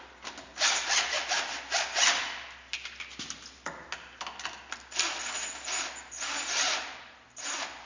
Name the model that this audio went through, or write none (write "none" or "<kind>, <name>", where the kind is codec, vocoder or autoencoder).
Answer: none